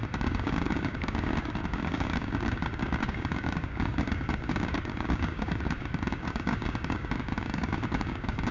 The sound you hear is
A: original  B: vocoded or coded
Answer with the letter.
B